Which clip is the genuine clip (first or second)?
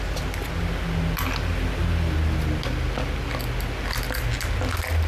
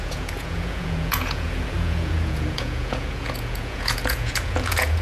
first